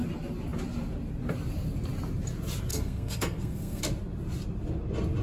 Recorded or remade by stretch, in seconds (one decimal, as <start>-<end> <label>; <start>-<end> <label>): 0.0-2.7 recorded; 2.7-3.8 remade; 3.8-5.2 recorded